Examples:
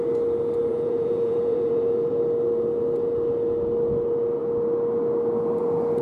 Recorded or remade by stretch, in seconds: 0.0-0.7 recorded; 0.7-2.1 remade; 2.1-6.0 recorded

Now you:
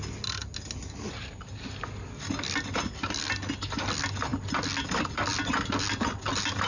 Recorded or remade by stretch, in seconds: 0.0-6.7 recorded

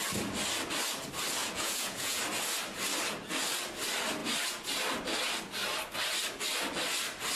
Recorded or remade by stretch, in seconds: 0.0-1.4 recorded; 1.4-2.2 remade; 2.2-7.4 recorded

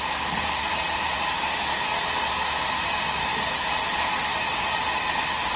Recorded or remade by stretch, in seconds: 0.0-5.6 recorded

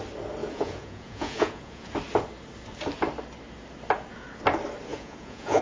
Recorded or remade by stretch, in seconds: 0.0-0.4 recorded; 0.4-1.9 remade; 1.9-4.9 recorded; 4.9-5.6 remade

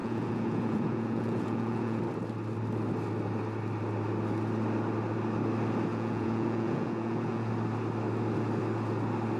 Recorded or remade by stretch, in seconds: 0.0-2.0 remade; 2.0-5.9 recorded; 5.9-7.5 remade; 7.5-9.4 recorded

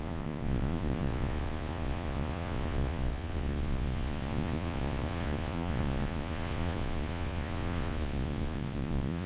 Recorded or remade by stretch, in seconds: 0.0-9.3 remade

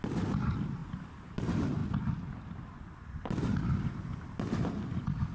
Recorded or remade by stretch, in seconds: 0.0-5.3 recorded